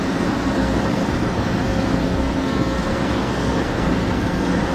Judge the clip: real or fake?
fake